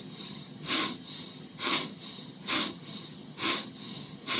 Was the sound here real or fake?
fake